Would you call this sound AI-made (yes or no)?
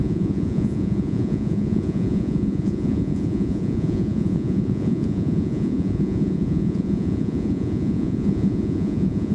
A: yes